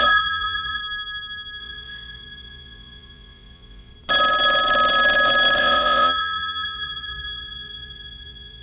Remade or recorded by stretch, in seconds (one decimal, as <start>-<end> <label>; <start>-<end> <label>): 0.0-0.8 remade; 0.8-1.6 recorded; 1.6-3.9 remade; 3.9-5.6 recorded; 5.6-8.6 remade